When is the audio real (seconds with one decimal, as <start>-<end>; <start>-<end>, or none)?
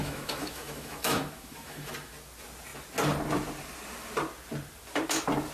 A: 1.9-5.5